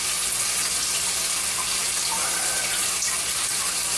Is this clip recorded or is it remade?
remade